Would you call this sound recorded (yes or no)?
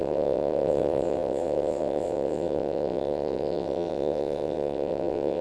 no